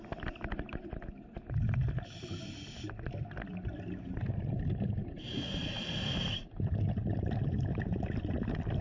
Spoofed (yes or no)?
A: no